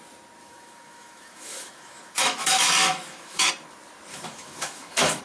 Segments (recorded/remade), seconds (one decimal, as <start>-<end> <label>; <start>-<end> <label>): 0.0-0.4 recorded; 0.4-3.5 remade; 3.5-4.1 recorded; 4.1-5.2 remade